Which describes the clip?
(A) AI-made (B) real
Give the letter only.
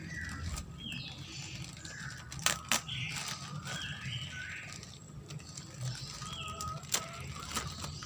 B